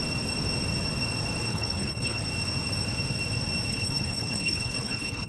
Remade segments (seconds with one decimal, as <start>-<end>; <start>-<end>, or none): 1.5-2.2; 3.7-5.3